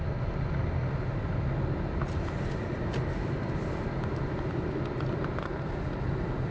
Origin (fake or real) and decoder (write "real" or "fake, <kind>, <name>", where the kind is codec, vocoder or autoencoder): real